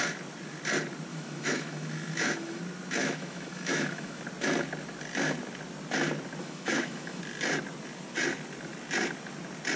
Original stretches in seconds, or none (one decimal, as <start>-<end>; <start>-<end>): 0.0-1.1; 2.6-3.0; 4.2-6.4; 7.2-9.8